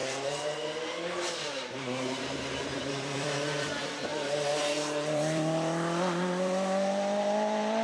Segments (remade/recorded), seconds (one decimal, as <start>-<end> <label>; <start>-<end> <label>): 0.0-4.1 remade; 4.1-4.6 recorded; 4.6-7.8 remade